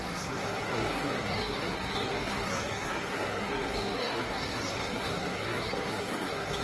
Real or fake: fake